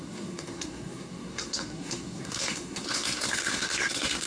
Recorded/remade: remade